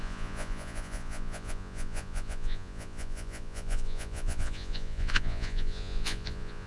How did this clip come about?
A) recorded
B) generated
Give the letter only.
B